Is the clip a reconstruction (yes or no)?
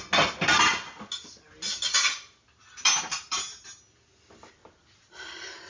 no